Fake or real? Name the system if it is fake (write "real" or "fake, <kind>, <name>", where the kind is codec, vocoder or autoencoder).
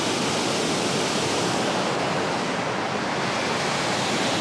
real